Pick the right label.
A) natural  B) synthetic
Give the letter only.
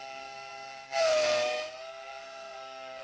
B